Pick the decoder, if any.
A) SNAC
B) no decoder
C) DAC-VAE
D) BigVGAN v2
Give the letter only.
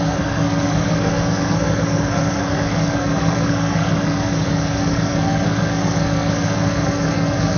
A